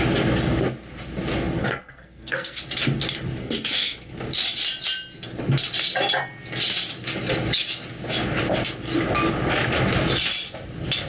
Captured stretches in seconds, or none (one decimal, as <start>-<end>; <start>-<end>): 0.0-1.6; 2.6-3.4; 4.1-11.1